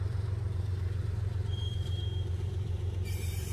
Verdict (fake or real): fake